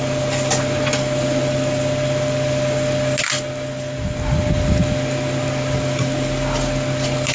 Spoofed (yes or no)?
no